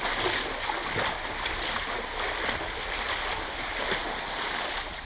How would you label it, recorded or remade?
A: recorded